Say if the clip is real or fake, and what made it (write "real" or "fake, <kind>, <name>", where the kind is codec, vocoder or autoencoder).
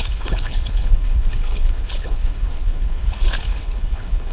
fake, codec, HILCodec